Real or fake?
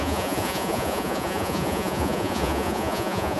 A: fake